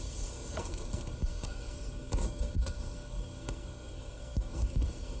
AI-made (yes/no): yes